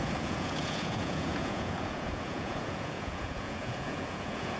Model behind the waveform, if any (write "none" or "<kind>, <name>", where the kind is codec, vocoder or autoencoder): vocoder, Vocos